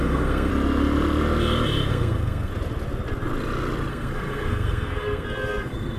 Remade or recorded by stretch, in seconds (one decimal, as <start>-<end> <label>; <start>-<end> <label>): 0.0-0.5 remade; 0.5-1.9 recorded; 1.9-2.5 remade; 2.5-3.9 recorded; 3.9-6.0 remade